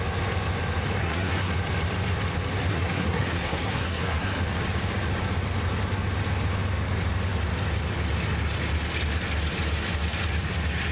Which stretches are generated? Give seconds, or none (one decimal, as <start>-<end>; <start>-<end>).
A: 1.0-1.5; 2.7-4.4